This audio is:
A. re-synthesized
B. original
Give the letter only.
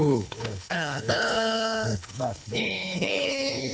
A